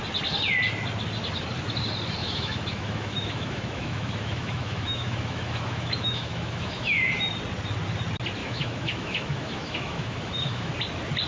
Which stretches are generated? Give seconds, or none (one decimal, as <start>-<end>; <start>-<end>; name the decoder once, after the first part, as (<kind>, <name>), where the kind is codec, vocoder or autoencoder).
2.2-7.1 (autoencoder, DAC-VAE); 8.4-10.7